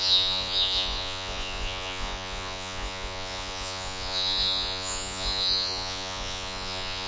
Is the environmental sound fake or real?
fake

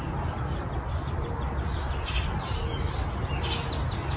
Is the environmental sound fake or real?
real